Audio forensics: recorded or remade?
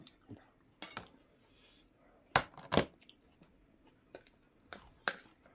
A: recorded